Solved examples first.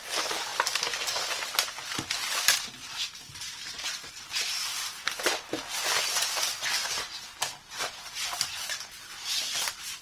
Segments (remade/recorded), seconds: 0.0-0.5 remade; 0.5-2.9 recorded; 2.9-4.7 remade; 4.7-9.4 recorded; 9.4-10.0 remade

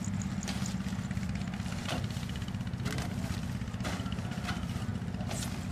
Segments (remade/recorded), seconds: 0.0-5.7 recorded

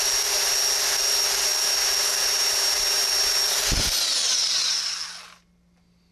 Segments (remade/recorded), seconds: 0.0-6.1 recorded

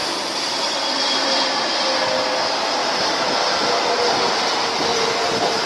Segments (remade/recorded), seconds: 0.0-1.7 remade; 1.7-5.7 recorded

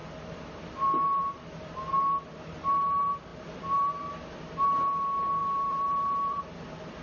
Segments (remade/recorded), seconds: 0.0-5.4 recorded; 5.4-6.4 remade; 6.4-7.0 recorded

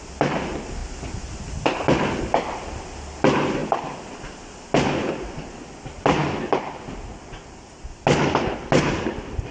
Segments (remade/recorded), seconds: 0.0-0.8 recorded; 0.8-1.5 remade; 1.5-3.6 recorded; 3.6-4.2 remade; 4.2-9.5 recorded

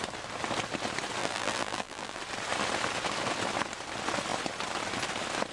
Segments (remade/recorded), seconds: 0.0-1.2 recorded; 1.2-2.2 remade; 2.2-5.5 recorded

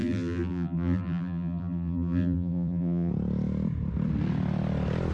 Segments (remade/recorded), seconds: 0.0-3.1 remade; 3.1-5.1 recorded